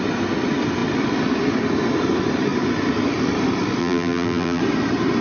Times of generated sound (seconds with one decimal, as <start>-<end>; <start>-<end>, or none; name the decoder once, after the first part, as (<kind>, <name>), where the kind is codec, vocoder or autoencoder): 3.8-4.6 (vocoder, BigVGAN v2)